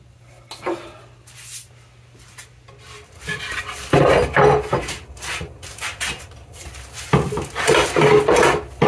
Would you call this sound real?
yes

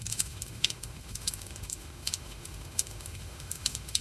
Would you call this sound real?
no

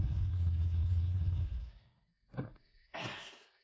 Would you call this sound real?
no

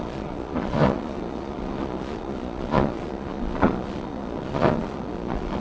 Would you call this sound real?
no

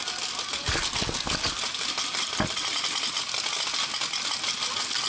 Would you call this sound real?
yes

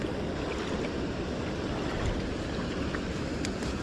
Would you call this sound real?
yes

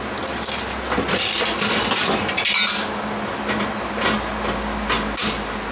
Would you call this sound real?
yes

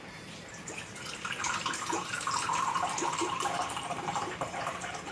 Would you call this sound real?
no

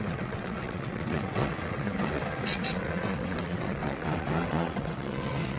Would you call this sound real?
no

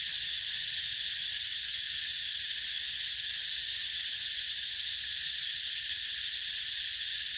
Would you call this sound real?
yes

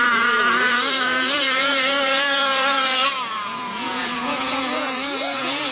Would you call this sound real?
no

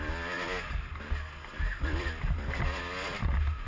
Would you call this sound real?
yes